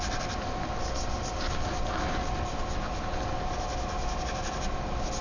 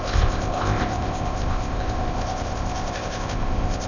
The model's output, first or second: second